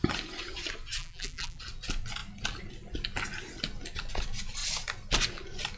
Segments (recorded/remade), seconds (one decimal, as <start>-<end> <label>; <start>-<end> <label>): 0.0-1.0 recorded; 1.0-1.6 remade; 1.6-5.8 recorded